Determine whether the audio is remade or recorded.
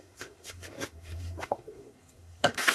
remade